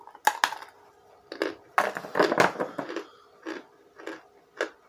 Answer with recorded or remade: recorded